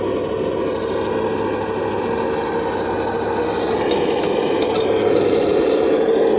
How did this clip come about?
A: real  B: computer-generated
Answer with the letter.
A